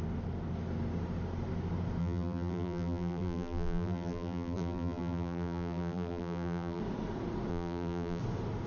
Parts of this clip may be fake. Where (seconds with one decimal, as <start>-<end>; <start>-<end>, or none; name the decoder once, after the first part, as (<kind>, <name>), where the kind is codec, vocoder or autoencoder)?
2.0-6.8 (vocoder, BigVGAN v2); 7.5-8.2

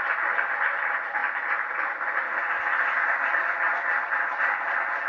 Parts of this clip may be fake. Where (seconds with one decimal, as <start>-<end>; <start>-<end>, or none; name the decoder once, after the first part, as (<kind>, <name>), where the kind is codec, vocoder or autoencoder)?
none

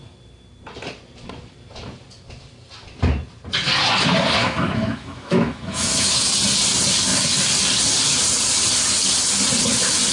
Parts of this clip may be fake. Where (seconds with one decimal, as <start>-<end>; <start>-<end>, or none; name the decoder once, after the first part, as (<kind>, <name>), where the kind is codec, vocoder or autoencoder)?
4.4-6.3 (autoencoder, DAC-VAE)

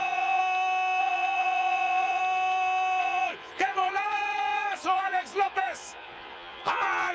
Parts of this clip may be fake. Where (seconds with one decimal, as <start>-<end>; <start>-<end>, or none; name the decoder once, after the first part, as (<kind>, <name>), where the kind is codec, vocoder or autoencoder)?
0.0-0.4 (vocoder, Vocos); 1.0-2.2; 3.0-7.1

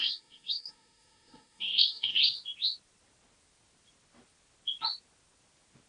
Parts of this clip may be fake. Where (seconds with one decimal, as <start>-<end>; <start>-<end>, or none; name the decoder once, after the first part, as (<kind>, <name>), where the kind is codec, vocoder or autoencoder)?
0.0-2.2 (codec, SNAC)

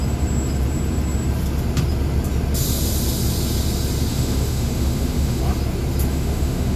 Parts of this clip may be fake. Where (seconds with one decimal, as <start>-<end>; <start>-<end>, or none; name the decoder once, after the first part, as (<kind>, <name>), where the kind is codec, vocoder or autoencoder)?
4.1-5.4 (autoencoder, DAC-VAE); 6.1-6.8